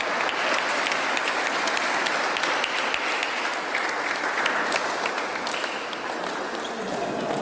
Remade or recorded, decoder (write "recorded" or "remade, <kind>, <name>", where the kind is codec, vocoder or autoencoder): recorded